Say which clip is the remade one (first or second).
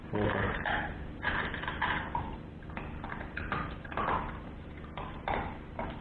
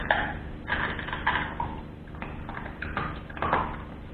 first